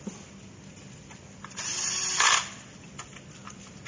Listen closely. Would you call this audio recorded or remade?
recorded